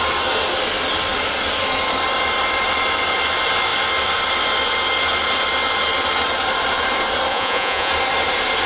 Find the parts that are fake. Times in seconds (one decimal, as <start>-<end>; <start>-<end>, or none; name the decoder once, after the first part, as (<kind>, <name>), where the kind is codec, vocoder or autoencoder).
7.3-7.9 (vocoder, Vocos)